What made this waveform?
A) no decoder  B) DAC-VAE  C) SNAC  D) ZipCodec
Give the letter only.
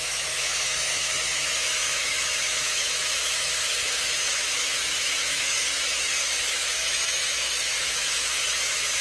B